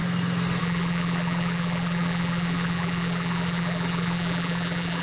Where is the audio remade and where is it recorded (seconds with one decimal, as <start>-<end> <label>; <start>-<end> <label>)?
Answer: 0.0-0.6 recorded; 0.6-5.0 remade